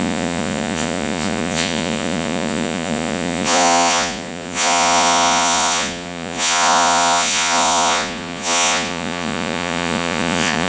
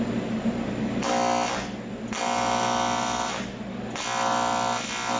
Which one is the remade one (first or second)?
first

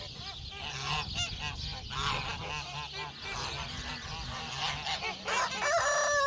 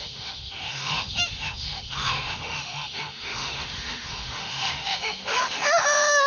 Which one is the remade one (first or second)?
second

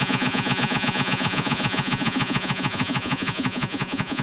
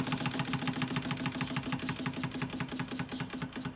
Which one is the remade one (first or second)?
first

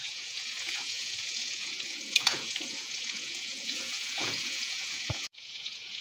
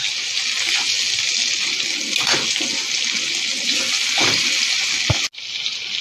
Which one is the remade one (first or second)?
first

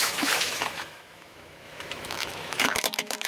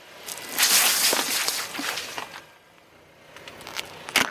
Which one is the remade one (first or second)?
first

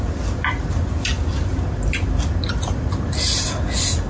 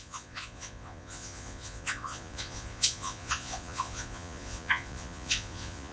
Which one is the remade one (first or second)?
second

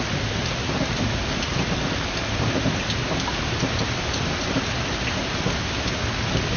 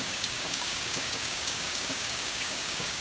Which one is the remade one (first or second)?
second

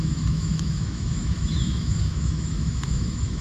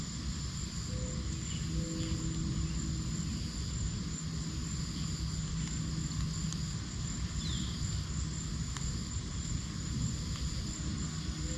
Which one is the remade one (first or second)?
first